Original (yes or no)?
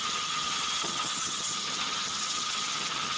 no